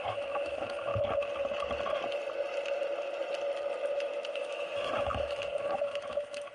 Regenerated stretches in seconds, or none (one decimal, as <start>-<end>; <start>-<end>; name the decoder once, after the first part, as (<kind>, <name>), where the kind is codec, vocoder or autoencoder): 0.0-0.9 (autoencoder, DAC-VAE); 4.3-6.5